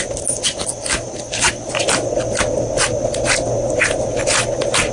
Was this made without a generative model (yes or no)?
yes